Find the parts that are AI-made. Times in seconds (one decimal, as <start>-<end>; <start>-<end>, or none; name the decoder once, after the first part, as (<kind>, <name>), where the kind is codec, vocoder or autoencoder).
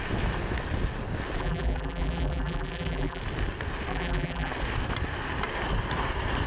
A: 1.4-3.2 (vocoder, BigVGAN v2); 3.9-4.5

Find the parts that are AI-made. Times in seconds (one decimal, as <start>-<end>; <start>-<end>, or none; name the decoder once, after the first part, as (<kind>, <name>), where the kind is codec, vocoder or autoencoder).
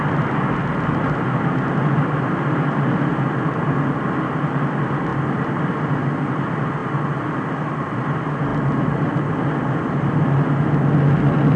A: none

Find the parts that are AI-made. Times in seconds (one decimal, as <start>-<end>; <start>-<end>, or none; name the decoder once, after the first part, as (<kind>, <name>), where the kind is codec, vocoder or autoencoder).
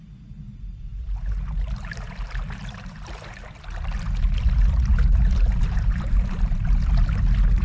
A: 0.9-3.5 (vocoder, BigVGAN v2); 4.9-6.5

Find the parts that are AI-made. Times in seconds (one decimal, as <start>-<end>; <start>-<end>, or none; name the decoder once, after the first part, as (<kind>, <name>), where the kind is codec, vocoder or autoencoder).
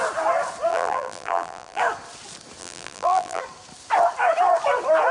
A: 0.7-1.8 (vocoder, BigVGAN v2); 2.6-3.4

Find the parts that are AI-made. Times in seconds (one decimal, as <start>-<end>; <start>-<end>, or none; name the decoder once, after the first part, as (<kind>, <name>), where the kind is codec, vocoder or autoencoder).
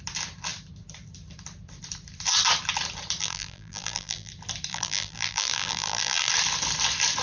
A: 3.2-4.3 (vocoder, BigVGAN v2); 4.7-6.3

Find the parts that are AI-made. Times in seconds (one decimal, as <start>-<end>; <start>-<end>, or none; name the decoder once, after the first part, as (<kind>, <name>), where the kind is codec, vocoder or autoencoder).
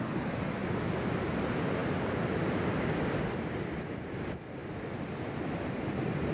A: 0.0-0.6 (vocoder, BigVGAN v2); 1.4-6.3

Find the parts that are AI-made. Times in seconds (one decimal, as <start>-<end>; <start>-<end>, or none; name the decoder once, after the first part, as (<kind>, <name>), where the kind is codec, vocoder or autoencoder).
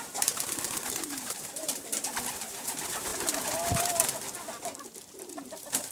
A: 0.0-3.1 (vocoder, BigVGAN v2); 5.3-5.9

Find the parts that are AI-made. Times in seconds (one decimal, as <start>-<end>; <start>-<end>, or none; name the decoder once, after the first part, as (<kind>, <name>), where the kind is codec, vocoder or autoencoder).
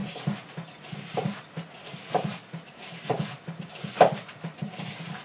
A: 4.1-4.8 (vocoder, BigVGAN v2)